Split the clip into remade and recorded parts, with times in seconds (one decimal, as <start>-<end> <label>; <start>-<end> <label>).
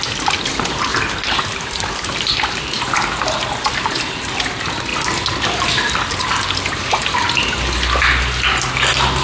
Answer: 0.0-9.2 recorded